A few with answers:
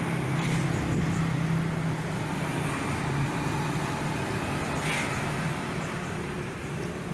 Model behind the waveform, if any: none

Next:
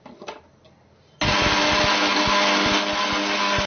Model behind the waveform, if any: none